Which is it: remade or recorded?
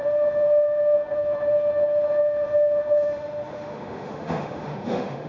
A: remade